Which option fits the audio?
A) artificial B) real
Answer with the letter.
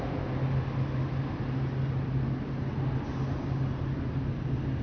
B